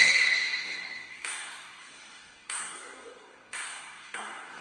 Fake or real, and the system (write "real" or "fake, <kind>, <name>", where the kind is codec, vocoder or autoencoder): fake, codec, SNAC